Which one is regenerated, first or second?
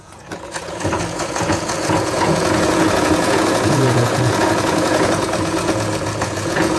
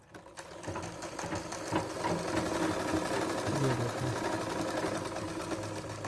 first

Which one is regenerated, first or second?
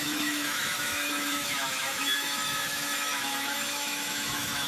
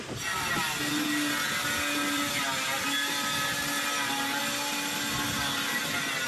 first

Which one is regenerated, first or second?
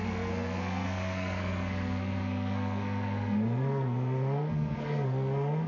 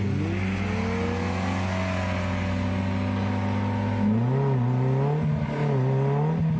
first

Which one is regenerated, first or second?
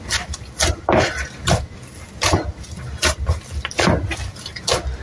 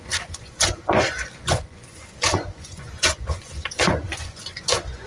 second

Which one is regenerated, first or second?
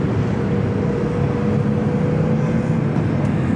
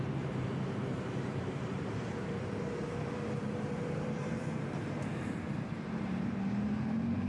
second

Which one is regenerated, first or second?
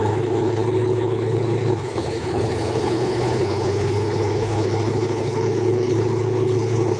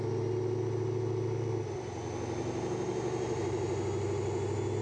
first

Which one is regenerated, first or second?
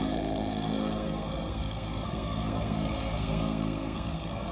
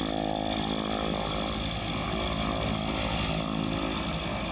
first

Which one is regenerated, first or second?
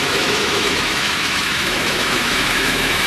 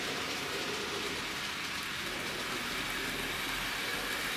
first